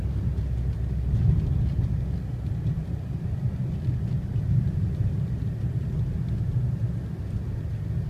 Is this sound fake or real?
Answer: real